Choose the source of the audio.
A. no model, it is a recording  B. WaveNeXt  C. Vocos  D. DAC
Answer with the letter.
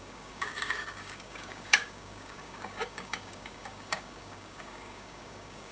D